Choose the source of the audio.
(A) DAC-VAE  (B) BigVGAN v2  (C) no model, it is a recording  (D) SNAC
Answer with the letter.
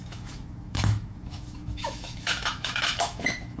A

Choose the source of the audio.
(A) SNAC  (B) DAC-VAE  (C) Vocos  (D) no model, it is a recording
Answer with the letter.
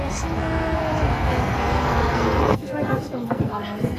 A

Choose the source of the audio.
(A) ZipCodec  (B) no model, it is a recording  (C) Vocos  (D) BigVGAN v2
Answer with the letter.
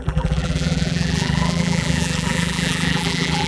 D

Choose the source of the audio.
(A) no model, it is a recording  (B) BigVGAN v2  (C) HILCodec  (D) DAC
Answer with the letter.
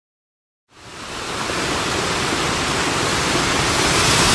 A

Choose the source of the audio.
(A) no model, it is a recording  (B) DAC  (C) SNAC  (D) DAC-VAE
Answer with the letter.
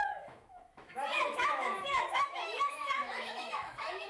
D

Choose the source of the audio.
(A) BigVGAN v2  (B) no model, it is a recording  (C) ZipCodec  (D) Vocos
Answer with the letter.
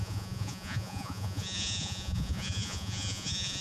D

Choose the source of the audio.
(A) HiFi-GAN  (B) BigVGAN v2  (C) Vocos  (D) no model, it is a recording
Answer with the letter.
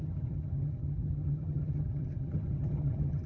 A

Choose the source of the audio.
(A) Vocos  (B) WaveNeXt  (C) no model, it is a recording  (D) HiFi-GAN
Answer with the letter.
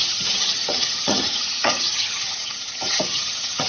D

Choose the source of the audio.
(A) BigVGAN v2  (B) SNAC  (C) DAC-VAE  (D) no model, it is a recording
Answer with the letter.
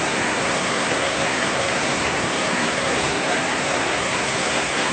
B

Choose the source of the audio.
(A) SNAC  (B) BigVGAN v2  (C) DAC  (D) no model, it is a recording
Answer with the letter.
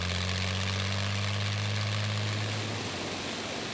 D